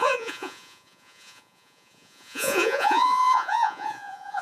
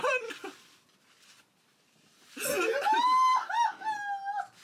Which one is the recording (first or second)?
second